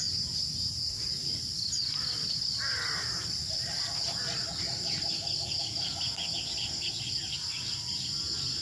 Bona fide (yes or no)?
yes